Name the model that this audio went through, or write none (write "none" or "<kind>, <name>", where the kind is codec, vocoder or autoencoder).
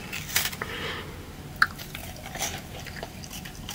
vocoder, BigVGAN v2